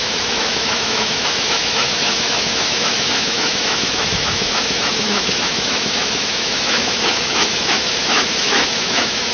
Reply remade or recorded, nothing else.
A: remade